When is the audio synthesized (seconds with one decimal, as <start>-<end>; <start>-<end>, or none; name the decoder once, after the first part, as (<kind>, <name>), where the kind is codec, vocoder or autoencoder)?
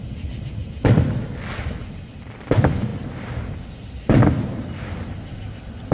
none